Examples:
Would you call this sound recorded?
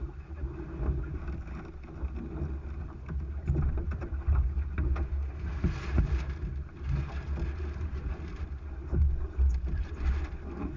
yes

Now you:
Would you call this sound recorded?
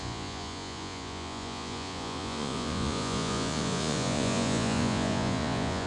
no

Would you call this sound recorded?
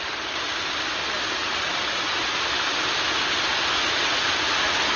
yes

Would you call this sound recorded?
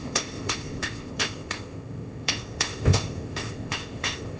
no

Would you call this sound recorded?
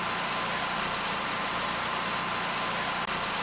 yes